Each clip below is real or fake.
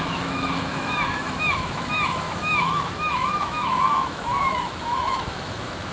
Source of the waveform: fake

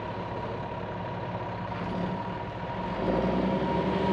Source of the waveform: real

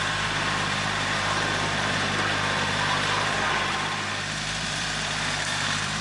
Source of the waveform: fake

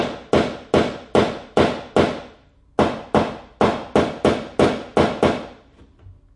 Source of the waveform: real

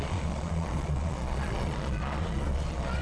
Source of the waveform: fake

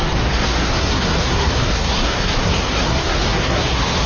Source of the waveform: fake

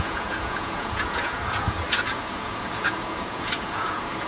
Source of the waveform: fake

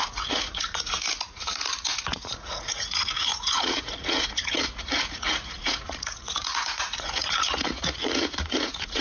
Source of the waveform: fake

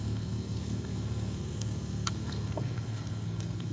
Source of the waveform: fake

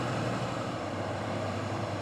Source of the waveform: fake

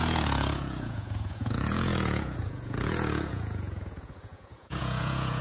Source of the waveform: fake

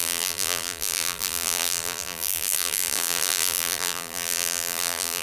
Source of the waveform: fake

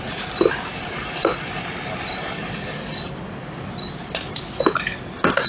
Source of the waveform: real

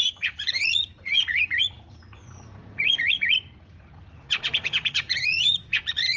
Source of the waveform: fake